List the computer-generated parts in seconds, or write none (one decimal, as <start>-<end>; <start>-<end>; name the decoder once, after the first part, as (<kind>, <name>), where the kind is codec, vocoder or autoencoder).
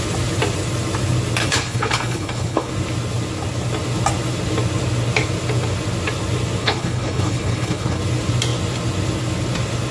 1.4-2.7 (codec, HILCodec); 6.6-8.0